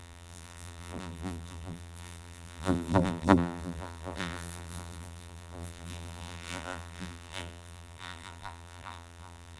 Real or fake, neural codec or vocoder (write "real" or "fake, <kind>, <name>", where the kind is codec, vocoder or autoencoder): fake, vocoder, BigVGAN v2